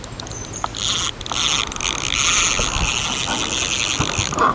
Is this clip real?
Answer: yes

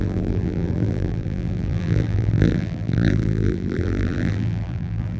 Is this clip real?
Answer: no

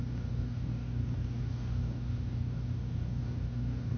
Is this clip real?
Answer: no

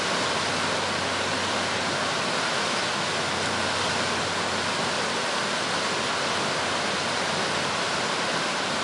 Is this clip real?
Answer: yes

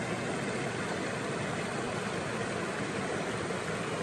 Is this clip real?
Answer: yes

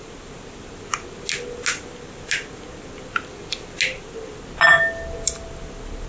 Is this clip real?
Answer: yes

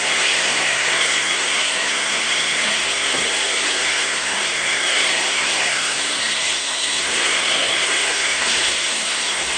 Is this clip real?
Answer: no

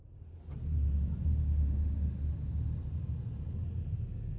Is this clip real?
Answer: yes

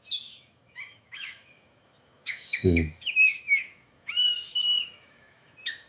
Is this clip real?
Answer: no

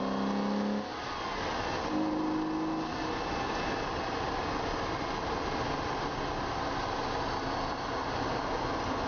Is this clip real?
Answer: yes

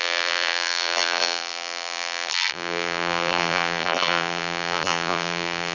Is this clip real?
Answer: no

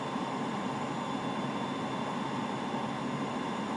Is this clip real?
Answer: yes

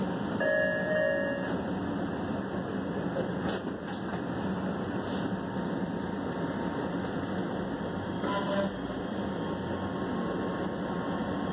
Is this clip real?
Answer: yes